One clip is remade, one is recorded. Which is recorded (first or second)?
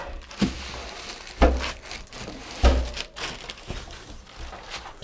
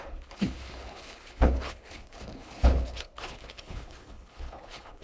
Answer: first